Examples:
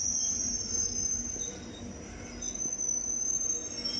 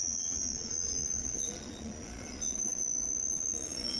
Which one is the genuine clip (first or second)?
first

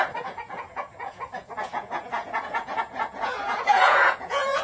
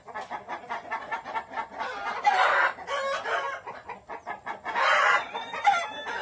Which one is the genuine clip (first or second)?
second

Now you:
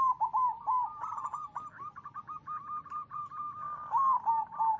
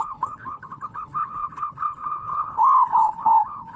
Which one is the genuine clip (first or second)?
first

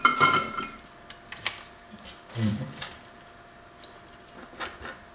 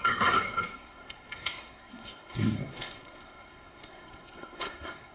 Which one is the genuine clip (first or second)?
first